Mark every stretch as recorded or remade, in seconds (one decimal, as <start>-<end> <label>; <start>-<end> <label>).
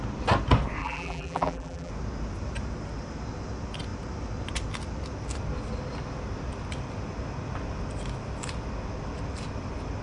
0.0-0.8 recorded; 0.8-1.9 remade; 1.9-10.0 recorded